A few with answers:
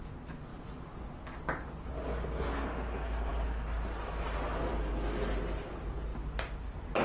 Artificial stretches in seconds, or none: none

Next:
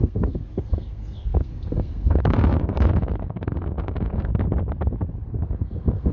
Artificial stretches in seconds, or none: 0.0-4.3; 5.4-6.1

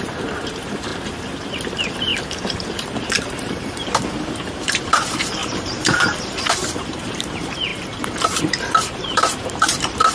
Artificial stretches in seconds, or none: 0.0-0.9; 1.7-7.7; 8.4-10.1

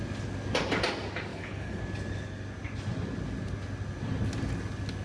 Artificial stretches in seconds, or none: 1.3-1.8